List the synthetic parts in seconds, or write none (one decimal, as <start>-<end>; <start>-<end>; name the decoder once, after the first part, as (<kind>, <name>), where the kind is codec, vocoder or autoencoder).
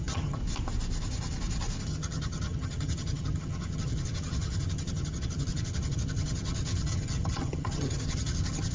0.0-0.4 (vocoder, HiFi-GAN); 1.8-8.7